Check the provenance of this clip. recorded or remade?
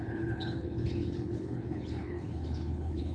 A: remade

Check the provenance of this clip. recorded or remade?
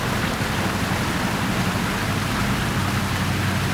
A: recorded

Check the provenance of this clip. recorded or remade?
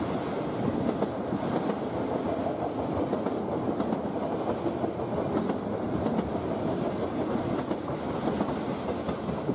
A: recorded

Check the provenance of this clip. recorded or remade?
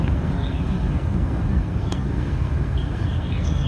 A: remade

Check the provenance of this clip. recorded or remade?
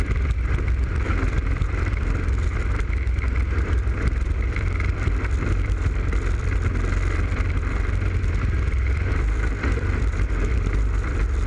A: remade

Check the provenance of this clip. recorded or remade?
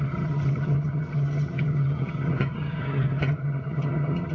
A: remade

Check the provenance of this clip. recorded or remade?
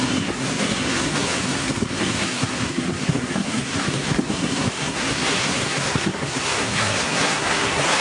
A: remade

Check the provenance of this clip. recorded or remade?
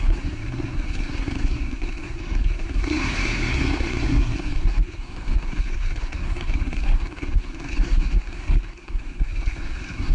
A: remade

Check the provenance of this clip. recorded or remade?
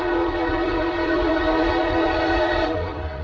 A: remade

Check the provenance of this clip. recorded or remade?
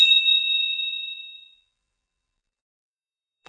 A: remade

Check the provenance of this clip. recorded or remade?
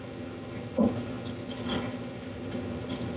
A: remade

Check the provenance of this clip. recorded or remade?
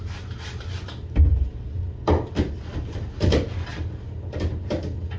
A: recorded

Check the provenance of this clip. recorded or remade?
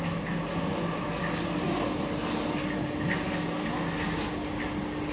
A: recorded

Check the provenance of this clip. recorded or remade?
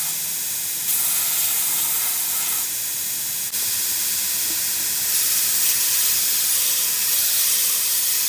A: recorded